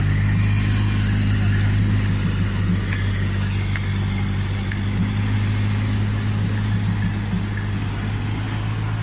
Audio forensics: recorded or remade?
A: recorded